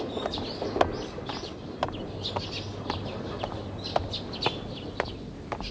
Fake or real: real